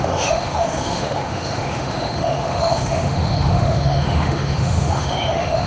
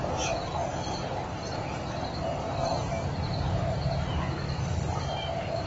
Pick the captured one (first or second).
second